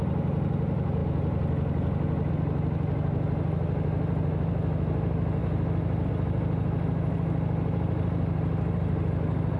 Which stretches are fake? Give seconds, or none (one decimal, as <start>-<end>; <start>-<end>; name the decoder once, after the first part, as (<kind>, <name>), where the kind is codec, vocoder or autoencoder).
none